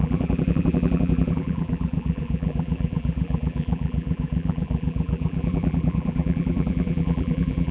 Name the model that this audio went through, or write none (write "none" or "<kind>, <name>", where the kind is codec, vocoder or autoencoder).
vocoder, BigVGAN v2